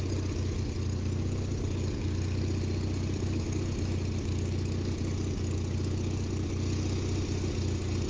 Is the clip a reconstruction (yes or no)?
no